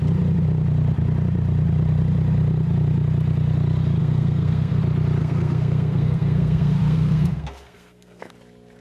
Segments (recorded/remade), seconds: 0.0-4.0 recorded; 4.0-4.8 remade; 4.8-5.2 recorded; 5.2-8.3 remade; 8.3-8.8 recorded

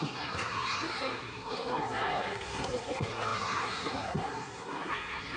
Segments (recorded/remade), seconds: 0.0-5.4 remade